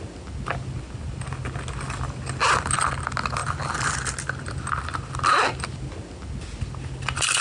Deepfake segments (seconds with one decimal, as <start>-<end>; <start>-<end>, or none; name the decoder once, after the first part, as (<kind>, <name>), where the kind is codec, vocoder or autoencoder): none